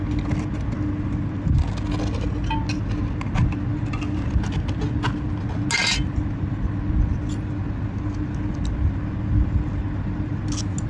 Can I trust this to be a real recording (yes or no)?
yes